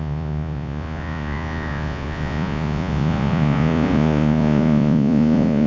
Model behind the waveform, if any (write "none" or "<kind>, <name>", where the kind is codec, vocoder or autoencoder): vocoder, Vocos